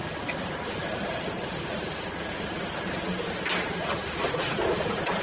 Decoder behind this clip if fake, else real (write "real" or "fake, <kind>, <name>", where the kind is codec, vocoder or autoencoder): real